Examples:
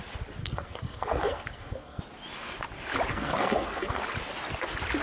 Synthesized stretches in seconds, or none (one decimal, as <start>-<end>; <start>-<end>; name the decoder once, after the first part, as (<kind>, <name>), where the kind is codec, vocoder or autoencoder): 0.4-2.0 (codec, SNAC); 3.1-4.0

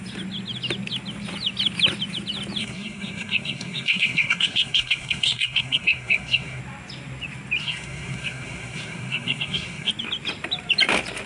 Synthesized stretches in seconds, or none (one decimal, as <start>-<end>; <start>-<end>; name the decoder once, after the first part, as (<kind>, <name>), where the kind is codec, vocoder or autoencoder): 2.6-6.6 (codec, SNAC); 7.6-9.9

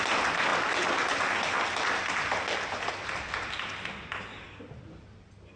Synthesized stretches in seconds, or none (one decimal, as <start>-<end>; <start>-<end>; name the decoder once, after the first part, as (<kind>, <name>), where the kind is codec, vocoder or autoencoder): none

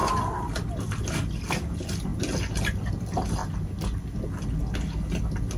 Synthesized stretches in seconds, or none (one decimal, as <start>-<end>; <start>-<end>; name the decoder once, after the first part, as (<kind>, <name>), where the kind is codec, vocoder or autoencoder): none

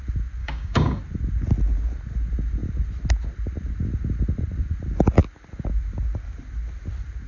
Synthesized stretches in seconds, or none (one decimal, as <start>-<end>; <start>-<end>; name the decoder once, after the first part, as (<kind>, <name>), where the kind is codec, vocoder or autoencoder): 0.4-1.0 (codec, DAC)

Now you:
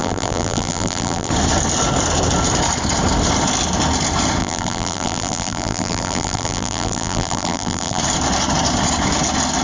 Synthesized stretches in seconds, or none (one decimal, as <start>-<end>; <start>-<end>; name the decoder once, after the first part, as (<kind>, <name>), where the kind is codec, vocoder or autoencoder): 0.0-1.3 (vocoder, BigVGAN v2); 4.4-8.0

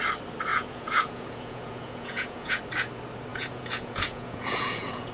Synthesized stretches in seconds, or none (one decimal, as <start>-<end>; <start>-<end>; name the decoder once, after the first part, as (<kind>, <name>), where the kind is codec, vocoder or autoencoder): 0.5-2.6 (vocoder, Vocos); 3.3-5.1

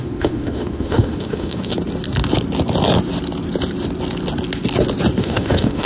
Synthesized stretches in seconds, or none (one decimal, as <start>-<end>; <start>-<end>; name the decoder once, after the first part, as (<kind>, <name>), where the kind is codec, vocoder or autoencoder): 0.0-1.7 (autoencoder, DAC-VAE); 5.2-5.9